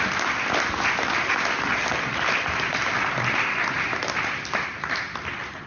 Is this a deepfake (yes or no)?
no